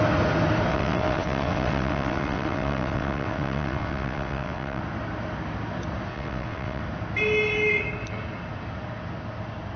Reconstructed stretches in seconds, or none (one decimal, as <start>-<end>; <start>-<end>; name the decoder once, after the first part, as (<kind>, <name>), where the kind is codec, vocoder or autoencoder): 0.7-4.8 (vocoder, WaveNeXt); 6.1-6.8